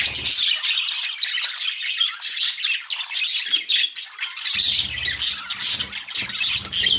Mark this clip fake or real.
real